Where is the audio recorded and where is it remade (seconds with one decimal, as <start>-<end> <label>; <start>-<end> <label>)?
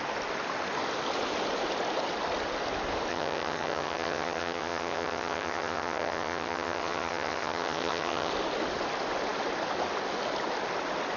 0.0-3.1 recorded; 3.1-8.3 remade; 8.3-11.2 recorded